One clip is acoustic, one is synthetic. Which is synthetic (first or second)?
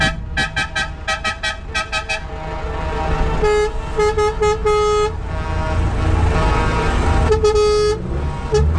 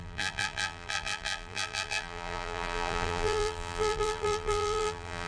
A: second